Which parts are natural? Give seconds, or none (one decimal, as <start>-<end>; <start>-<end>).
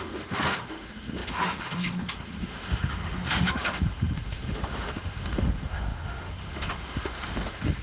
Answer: none